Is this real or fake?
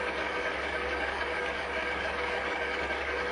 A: fake